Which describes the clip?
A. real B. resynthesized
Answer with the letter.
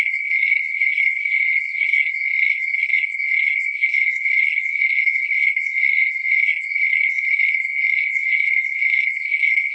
B